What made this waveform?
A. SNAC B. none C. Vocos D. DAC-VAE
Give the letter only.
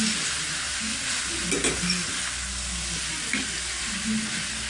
B